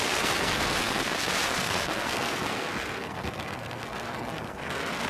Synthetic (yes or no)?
yes